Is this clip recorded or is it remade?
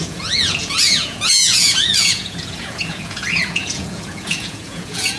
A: remade